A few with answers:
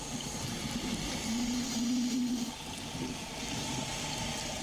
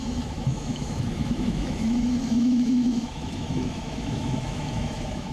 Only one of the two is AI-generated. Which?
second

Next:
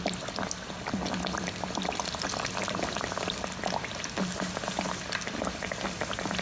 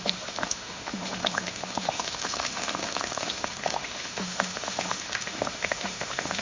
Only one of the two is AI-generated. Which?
second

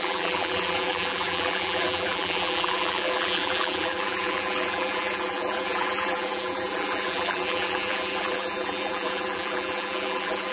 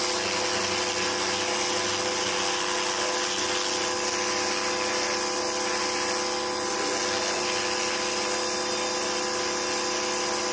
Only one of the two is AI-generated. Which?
first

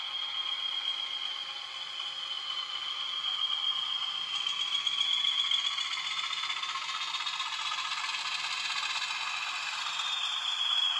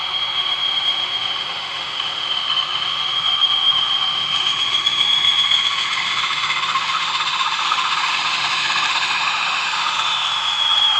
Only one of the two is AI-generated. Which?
second